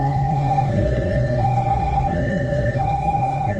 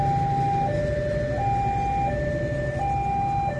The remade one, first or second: first